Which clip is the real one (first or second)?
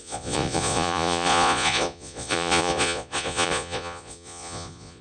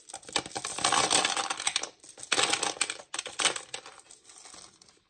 second